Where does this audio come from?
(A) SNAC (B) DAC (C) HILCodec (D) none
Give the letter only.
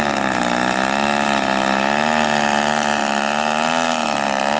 D